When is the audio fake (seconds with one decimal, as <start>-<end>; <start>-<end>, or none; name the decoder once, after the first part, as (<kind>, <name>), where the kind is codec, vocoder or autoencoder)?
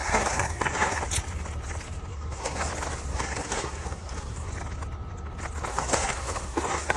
0.0-1.0 (codec, SNAC); 2.1-2.7; 3.1-4.5; 5.7-7.0